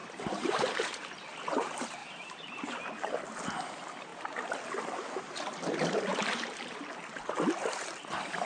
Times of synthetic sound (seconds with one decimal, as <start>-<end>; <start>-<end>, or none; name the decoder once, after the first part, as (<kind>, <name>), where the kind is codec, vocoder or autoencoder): 0.0-0.9 (vocoder, BigVGAN v2); 2.0-2.9; 6.1-6.9